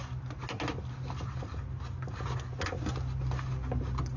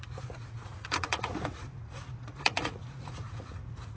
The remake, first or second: second